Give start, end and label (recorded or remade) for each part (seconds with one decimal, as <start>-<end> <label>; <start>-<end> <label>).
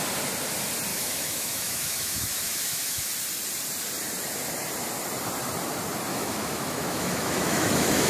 0.0-0.9 recorded; 0.9-3.1 remade; 3.1-6.1 recorded; 6.1-8.1 remade